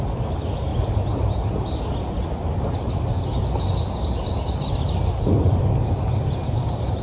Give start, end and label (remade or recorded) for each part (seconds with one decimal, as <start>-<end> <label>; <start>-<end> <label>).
0.0-7.0 recorded